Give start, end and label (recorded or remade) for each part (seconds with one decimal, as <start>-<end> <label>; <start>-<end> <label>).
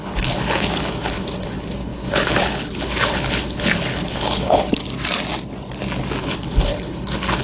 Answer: 0.0-4.8 remade; 4.8-6.2 recorded; 6.2-7.4 remade